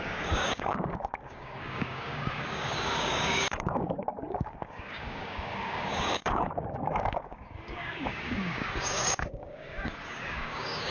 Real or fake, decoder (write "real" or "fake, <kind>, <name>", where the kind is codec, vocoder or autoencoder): fake, codec, DAC